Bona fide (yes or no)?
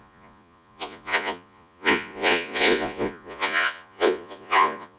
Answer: no